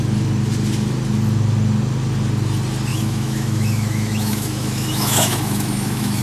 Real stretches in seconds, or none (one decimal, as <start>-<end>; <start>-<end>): 0.0-2.9